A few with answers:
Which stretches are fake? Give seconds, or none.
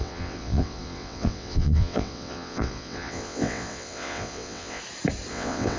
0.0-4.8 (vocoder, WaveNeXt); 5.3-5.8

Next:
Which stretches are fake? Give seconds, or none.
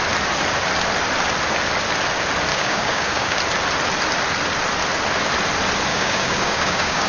2.5-3.4 (codec, DAC); 5.9-7.1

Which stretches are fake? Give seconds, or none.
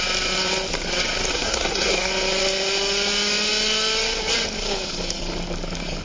1.3-2.1 (codec, SNAC)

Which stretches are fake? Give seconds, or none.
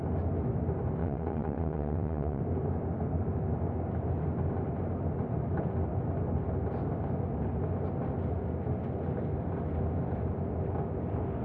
1.0-2.4 (vocoder, WaveNeXt)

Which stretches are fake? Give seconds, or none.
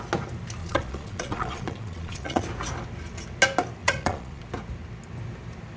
0.6-2.4 (vocoder, Vocos); 3.8-4.4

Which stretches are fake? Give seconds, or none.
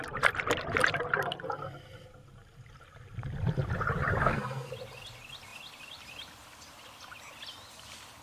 4.2-4.7 (codec, SNAC)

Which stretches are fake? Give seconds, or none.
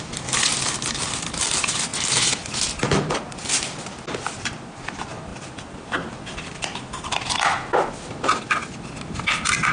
none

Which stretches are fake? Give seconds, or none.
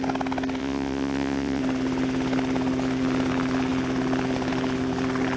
0.6-1.6 (vocoder, Vocos)